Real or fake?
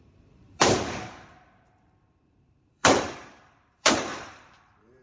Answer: fake